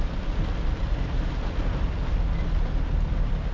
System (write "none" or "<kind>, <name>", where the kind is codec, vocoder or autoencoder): vocoder, BigVGAN v2